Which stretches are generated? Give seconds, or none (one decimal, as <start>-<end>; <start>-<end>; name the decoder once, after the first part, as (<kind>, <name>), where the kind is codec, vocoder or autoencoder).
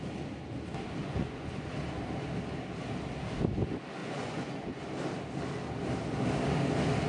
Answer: 1.0-1.7 (vocoder, Vocos); 4.0-4.8